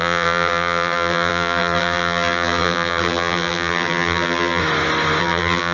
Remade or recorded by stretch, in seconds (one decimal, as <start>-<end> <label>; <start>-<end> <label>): 0.0-4.6 remade; 4.6-5.2 recorded; 5.2-5.7 remade